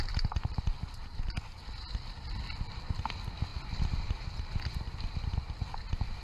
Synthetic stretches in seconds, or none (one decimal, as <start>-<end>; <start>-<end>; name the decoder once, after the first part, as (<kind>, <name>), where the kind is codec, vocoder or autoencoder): none